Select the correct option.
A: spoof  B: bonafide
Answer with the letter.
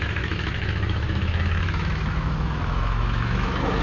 A